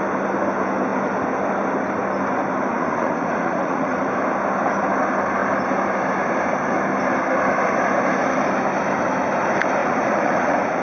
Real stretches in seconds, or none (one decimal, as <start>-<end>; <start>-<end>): 0.0-2.7; 4.0-9.8